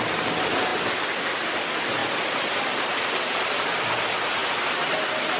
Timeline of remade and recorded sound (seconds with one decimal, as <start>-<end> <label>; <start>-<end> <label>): 0.0-2.0 recorded; 2.0-3.9 remade; 3.9-5.4 recorded